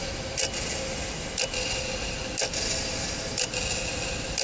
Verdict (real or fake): real